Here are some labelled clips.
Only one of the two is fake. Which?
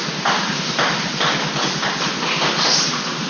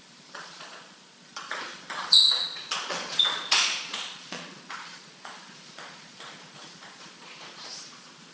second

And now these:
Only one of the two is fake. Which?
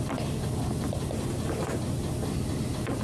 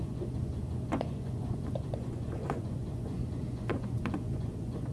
second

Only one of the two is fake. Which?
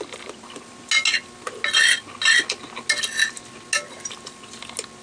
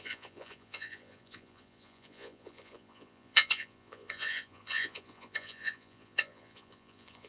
second